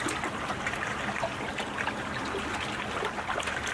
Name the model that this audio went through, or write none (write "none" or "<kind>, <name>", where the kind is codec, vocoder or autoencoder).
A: none